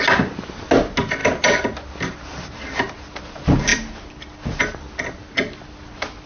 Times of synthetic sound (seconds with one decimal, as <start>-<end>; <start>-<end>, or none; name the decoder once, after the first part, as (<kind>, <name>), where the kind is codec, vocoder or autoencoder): none